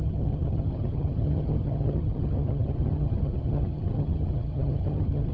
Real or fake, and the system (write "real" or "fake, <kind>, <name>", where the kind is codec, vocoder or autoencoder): fake, vocoder, HiFi-GAN